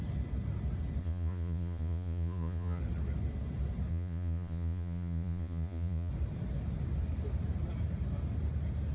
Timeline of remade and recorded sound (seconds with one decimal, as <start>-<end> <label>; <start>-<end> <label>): 0.0-1.0 recorded; 1.0-2.8 remade; 2.8-3.9 recorded; 3.9-6.1 remade; 6.1-8.9 recorded